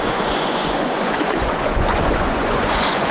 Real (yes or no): no